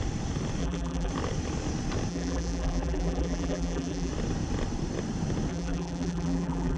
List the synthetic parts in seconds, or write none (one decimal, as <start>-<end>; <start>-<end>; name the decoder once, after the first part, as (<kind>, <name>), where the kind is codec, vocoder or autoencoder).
0.6-1.1 (vocoder, BigVGAN v2); 2.1-4.1; 5.5-6.8